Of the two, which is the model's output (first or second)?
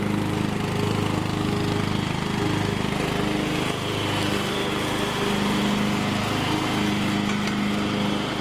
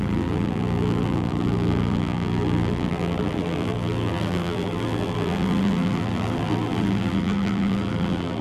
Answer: second